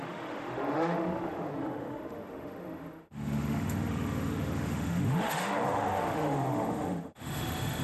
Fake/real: fake